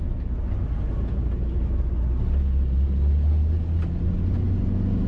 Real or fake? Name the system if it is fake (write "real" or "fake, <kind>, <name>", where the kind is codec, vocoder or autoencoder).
real